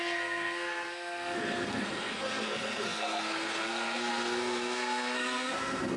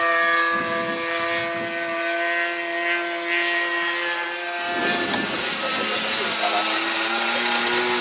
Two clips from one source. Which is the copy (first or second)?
first